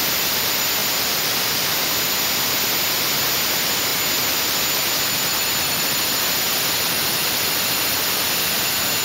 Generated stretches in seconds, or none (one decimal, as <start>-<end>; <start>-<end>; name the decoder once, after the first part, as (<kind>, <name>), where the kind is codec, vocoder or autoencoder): none